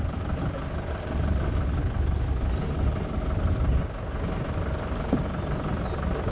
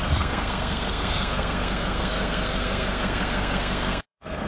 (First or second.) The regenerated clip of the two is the second